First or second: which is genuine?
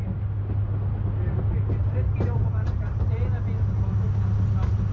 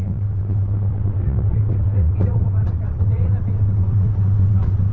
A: first